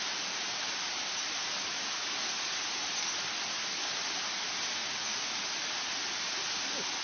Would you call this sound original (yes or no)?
yes